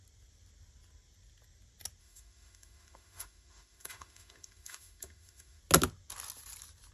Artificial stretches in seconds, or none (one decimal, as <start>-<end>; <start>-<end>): 2.0-5.6